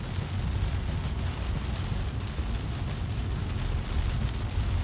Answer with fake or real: real